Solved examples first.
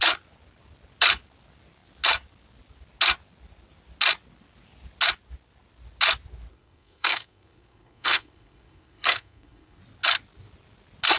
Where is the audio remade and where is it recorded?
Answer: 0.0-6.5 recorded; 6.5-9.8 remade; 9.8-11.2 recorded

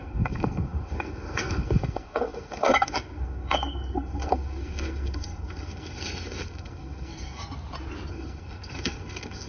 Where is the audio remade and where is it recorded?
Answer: 0.0-7.4 remade; 7.4-8.1 recorded; 8.1-9.5 remade